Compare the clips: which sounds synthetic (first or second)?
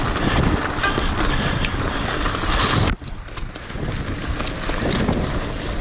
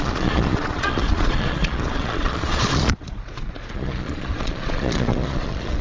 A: second